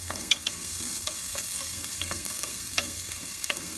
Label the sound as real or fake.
fake